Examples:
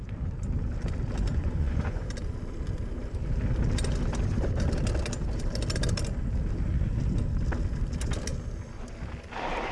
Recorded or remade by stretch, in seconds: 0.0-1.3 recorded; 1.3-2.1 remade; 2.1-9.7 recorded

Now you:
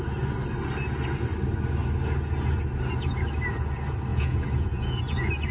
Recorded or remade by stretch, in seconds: 0.0-4.1 recorded; 4.1-5.0 remade; 5.0-5.5 recorded